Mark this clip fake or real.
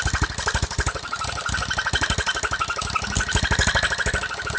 real